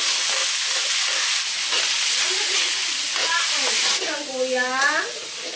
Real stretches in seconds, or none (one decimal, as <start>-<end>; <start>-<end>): 0.4-0.9; 3.2-5.6